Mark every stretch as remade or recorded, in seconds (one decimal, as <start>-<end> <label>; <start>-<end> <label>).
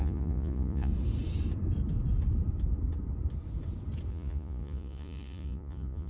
0.0-0.9 remade; 0.9-4.1 recorded; 4.1-6.1 remade